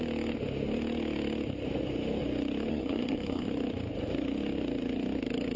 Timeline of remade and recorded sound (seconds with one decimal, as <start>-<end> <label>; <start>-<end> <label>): 0.0-2.7 recorded; 2.7-3.5 remade; 3.5-5.6 recorded